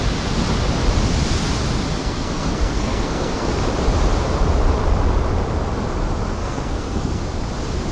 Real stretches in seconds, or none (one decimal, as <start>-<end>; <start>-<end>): 0.0-2.0; 3.5-6.4; 7.2-7.9